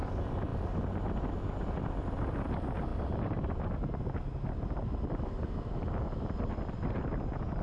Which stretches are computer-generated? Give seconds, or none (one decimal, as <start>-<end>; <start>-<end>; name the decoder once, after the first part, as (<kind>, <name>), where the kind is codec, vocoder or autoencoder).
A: none